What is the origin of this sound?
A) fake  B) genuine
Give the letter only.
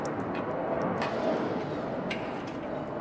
B